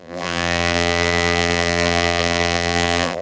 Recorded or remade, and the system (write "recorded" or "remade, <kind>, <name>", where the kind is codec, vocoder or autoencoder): remade, vocoder, BigVGAN v2